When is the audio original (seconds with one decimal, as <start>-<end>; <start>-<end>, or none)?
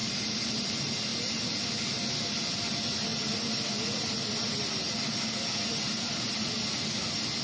0.0-7.4